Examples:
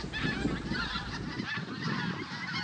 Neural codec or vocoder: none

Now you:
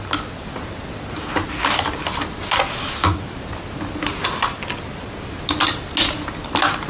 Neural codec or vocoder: none